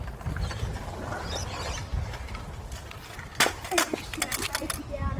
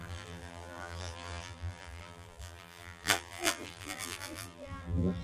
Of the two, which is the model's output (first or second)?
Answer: second